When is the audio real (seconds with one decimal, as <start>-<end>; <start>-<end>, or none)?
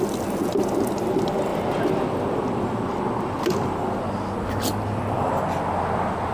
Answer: 0.0-6.3